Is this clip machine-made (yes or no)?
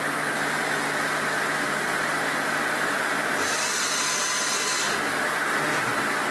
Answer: no